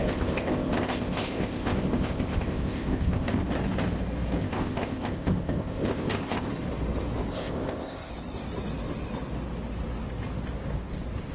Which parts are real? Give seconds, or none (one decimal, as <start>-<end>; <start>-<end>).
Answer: 3.4-4.4; 6.5-7.3; 8.1-11.3